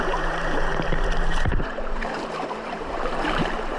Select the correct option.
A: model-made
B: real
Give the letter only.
A